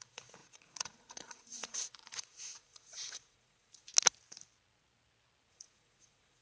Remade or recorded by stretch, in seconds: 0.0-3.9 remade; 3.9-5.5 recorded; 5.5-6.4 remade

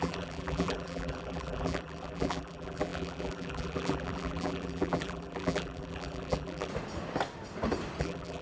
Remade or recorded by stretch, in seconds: 0.0-6.7 remade; 6.7-8.0 recorded; 8.0-8.4 remade

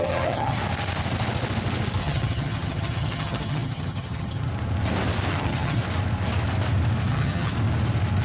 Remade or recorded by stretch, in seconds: 0.0-0.6 remade; 0.6-2.0 recorded; 2.0-4.5 remade; 4.5-5.3 recorded; 5.3-5.8 remade; 5.8-7.1 recorded; 7.1-7.5 remade; 7.5-8.2 recorded

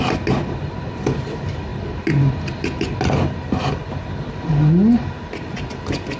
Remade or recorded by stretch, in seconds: 0.0-6.2 recorded

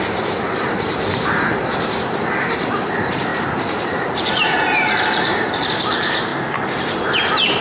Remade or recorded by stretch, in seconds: 0.0-3.3 remade; 3.3-3.8 recorded; 3.8-6.3 remade; 6.3-6.8 recorded; 6.8-7.6 remade

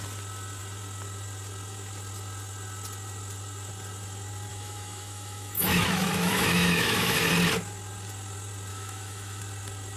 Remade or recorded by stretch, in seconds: 0.0-4.5 recorded; 4.5-7.3 remade; 7.3-8.7 recorded; 8.7-9.4 remade; 9.4-10.0 recorded

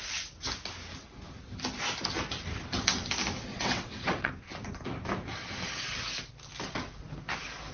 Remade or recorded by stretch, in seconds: 0.0-3.5 recorded; 3.5-4.3 remade; 4.3-7.7 recorded

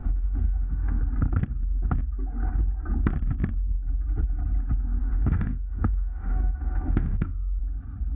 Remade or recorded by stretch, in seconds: 0.0-1.0 remade; 1.0-5.0 recorded; 5.0-7.6 remade; 7.6-8.1 recorded